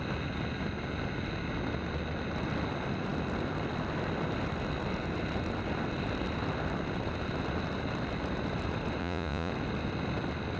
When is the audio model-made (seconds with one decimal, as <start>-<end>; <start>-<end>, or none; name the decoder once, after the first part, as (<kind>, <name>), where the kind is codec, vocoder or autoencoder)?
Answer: 9.0-9.5 (vocoder, Vocos)